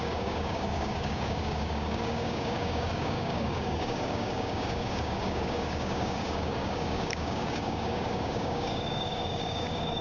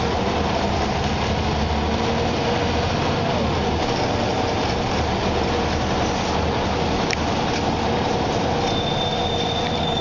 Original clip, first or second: second